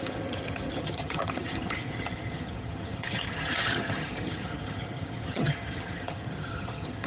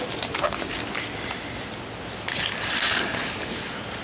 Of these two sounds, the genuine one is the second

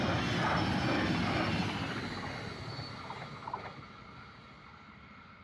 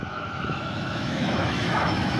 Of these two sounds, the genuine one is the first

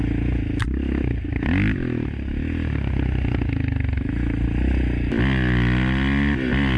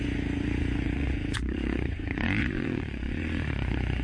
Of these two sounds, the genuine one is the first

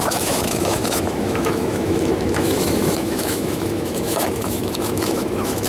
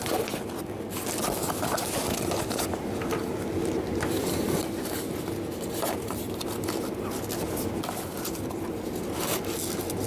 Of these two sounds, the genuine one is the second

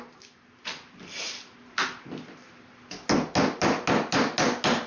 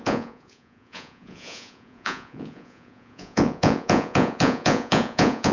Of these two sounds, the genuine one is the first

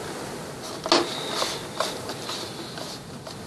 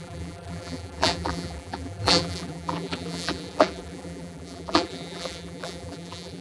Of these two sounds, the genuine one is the first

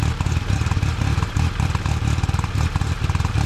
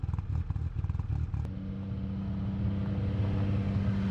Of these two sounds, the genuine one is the second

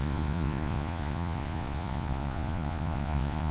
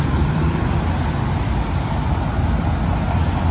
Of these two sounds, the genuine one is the second